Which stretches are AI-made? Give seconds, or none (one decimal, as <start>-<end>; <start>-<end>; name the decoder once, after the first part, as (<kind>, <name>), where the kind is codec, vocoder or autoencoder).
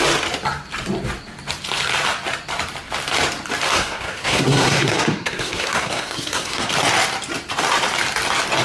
3.7-6.7 (codec, SNAC)